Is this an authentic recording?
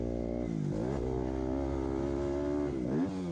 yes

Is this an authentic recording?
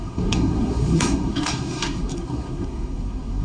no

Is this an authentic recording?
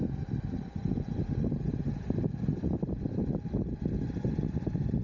yes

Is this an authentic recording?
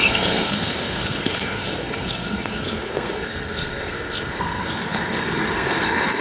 no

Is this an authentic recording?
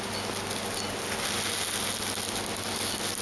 yes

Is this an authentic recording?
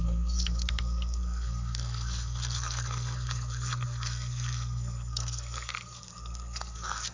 no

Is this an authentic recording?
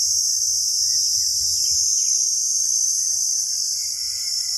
yes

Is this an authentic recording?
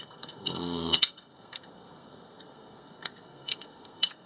no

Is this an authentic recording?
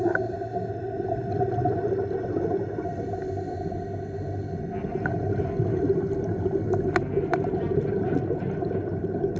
yes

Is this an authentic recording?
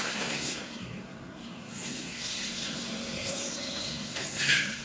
no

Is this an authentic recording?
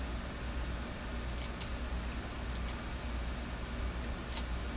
yes